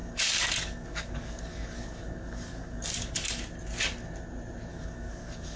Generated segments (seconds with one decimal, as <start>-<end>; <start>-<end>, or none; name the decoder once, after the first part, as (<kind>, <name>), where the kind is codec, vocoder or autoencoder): 0.0-3.4 (codec, DAC); 4.7-5.6